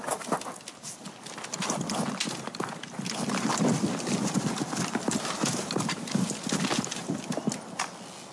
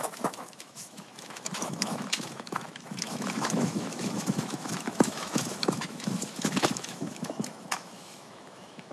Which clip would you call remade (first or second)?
second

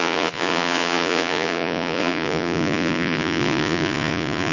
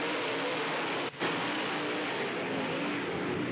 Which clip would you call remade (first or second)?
first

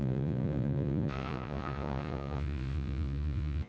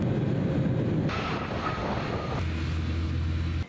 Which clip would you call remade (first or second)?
first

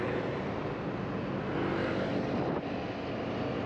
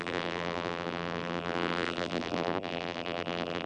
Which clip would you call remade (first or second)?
second